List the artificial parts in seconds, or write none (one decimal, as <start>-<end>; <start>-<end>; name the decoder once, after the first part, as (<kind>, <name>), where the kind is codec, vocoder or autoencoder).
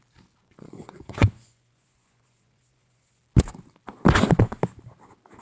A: 0.4-3.2 (vocoder, Vocos)